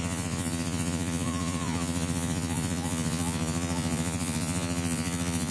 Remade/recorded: remade